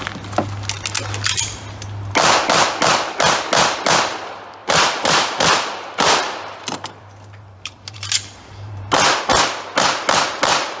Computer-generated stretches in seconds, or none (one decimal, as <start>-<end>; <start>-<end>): 4.6-8.9